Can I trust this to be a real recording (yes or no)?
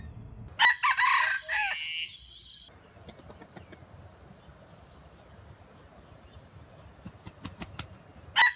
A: yes